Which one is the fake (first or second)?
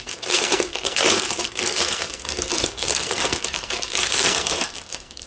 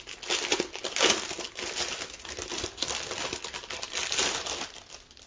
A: first